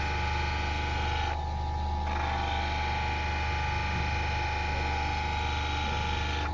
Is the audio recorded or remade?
recorded